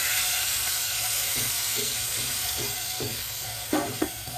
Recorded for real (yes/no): no